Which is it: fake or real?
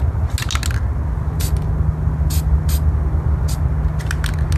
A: real